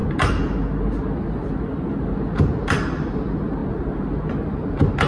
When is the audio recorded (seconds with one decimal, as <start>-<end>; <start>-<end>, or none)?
0.0-5.1